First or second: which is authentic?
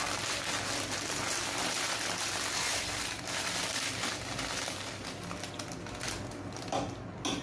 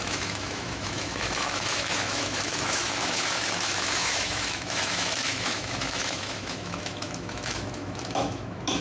first